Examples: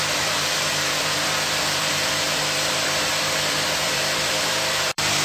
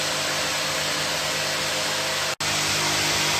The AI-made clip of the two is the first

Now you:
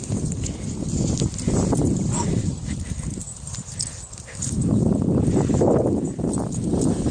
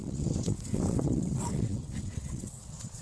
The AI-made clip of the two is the second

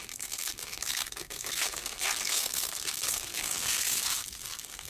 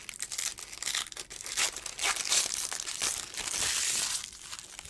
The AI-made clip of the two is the first